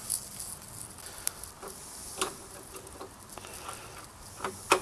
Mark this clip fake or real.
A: real